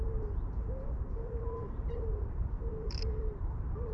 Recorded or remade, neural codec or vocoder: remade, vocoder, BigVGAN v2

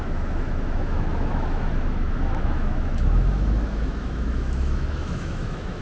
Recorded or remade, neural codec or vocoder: remade, autoencoder, DAC-VAE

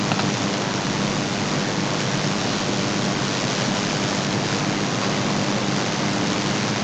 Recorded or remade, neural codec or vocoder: recorded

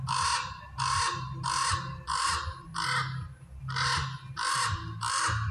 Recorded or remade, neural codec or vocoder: recorded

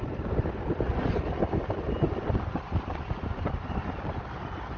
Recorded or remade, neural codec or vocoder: recorded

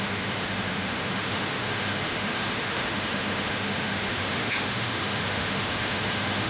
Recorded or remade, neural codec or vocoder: remade, autoencoder, DAC-VAE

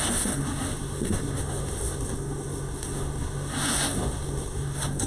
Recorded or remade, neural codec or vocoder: remade, codec, SNAC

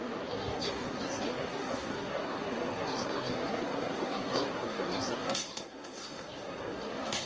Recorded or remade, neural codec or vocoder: remade, codec, SNAC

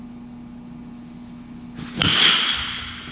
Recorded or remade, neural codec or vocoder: recorded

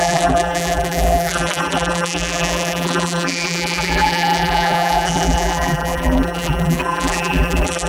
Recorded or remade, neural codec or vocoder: remade, vocoder, BigVGAN v2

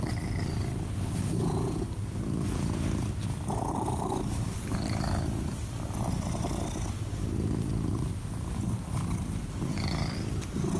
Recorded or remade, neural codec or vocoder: recorded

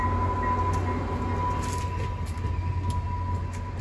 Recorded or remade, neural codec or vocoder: recorded